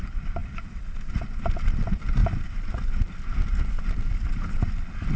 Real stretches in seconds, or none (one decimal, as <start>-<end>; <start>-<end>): 0.0-0.4; 1.2-5.2